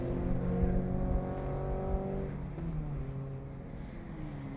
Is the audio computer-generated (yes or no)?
no